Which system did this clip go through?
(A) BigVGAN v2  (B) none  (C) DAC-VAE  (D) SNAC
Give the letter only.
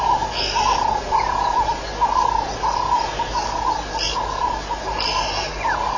B